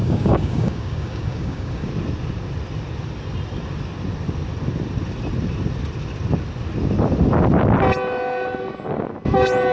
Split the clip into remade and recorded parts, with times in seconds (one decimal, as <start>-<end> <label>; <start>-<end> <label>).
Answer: 0.0-1.9 remade; 1.9-9.7 recorded

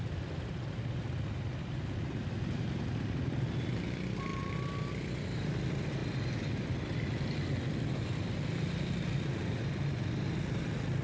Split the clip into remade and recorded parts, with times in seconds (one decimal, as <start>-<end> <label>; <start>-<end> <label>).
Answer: 0.0-11.0 recorded

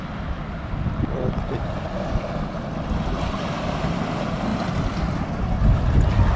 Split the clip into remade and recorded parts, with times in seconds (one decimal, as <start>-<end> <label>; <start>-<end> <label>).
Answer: 0.0-6.4 recorded

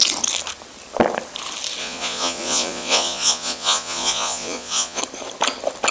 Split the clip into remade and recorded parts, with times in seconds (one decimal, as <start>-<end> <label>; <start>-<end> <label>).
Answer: 0.0-1.8 recorded; 1.8-5.0 remade; 5.0-5.9 recorded